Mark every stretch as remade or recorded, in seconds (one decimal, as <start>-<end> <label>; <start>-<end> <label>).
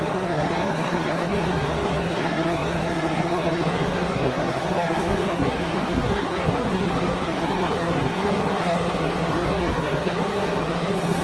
0.0-11.2 remade